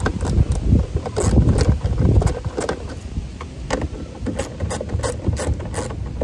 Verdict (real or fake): real